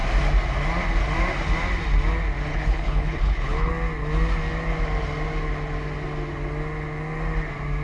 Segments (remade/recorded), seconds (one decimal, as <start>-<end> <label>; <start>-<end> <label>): 0.0-2.5 recorded; 2.5-3.7 remade; 3.7-7.8 recorded